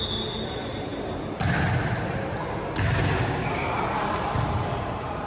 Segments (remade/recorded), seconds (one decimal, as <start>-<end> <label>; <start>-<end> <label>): 0.0-5.3 recorded